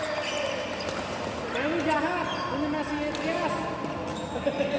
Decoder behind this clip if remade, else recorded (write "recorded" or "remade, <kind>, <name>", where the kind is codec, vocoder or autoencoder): recorded